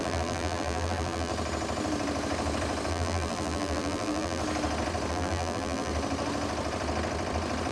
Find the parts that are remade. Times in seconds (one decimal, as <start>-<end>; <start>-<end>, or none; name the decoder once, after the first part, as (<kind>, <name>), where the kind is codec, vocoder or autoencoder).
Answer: 0.0-1.3 (vocoder, BigVGAN v2); 2.9-4.4; 5.1-5.9